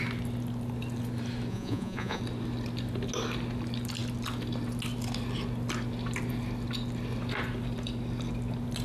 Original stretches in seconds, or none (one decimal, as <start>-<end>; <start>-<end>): 0.0-1.5; 2.2-8.8